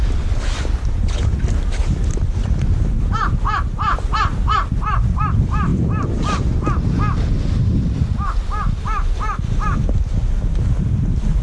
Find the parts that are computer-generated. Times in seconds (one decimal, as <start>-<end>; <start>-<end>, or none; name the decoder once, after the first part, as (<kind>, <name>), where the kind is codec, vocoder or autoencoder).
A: none